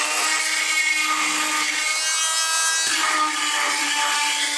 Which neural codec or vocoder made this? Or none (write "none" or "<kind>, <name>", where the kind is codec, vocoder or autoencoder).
none